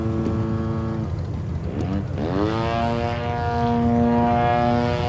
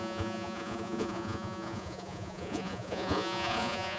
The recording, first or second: first